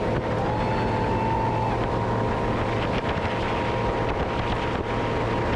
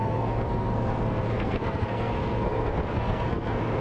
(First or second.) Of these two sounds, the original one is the first